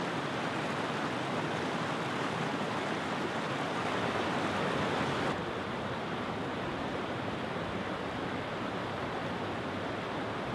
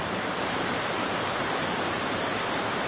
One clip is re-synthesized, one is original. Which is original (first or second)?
first